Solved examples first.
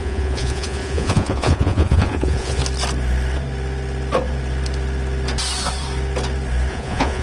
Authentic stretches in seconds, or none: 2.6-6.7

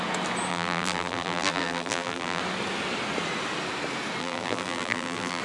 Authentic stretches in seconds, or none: 0.0-0.5; 2.4-4.2

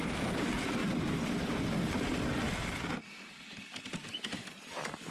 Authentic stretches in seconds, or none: 0.0-5.1

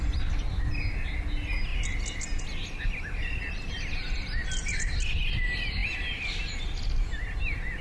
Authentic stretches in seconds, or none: 0.0-7.8